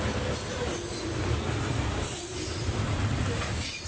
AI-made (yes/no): no